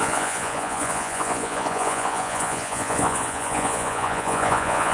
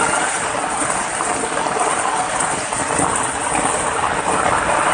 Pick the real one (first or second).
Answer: second